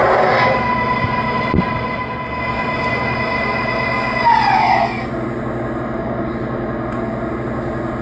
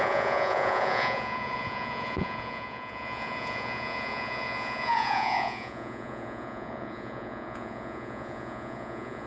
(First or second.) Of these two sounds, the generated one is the second